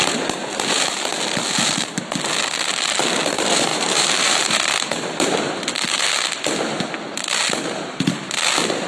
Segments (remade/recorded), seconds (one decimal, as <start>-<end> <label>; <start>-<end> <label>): 0.0-0.6 remade; 0.6-3.7 recorded; 3.7-5.7 remade; 5.7-8.9 recorded